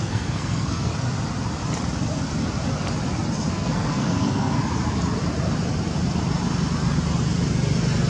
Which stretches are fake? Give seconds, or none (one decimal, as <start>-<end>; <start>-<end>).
0.0-0.9; 3.5-4.6